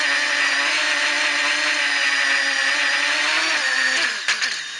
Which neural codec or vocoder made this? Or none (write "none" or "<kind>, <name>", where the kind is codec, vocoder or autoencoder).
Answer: none